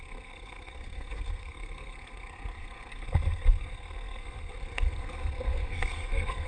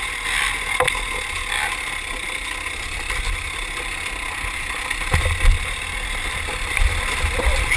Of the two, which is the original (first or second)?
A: second